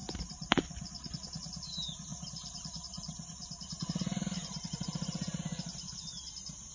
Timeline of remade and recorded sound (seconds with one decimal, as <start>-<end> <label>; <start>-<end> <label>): 0.0-0.5 remade; 0.5-2.1 recorded; 2.1-5.4 remade; 5.4-6.7 recorded